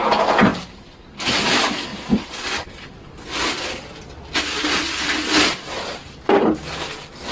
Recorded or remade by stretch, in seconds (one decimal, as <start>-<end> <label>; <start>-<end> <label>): 0.0-7.3 remade